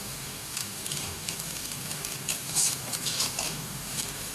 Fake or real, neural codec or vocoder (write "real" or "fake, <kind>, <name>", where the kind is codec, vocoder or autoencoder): fake, codec, DAC